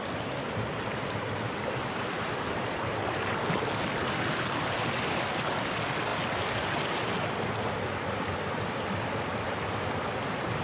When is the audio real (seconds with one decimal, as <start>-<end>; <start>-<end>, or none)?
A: 0.0-10.6